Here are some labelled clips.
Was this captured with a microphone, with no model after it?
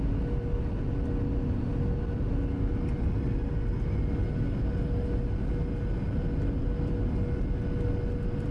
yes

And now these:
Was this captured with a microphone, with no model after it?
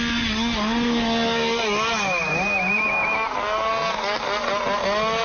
yes